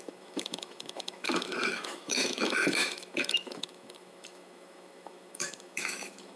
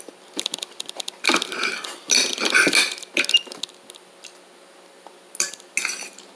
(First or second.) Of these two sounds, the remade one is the first